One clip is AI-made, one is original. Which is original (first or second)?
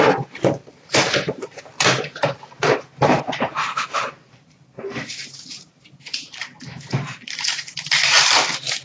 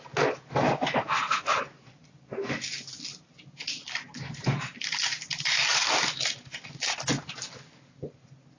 second